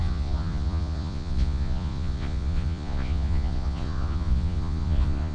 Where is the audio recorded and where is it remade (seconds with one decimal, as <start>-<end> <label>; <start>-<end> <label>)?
0.0-5.3 remade